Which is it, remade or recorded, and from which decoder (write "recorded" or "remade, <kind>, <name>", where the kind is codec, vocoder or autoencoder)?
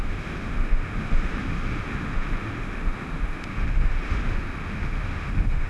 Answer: remade, autoencoder, DAC-VAE